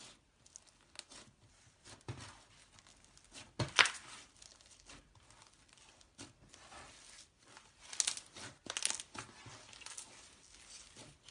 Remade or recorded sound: recorded